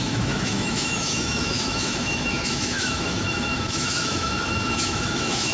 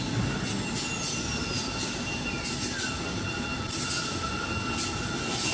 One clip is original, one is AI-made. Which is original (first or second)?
second